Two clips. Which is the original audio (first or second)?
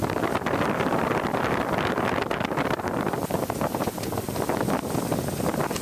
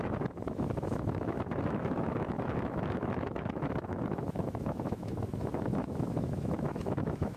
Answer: first